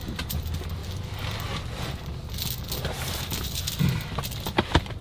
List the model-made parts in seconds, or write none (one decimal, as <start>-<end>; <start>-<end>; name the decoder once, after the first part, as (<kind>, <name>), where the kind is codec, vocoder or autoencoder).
none